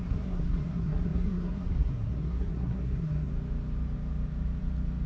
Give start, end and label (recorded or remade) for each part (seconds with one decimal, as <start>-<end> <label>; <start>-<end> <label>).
0.0-3.3 remade; 3.3-5.1 recorded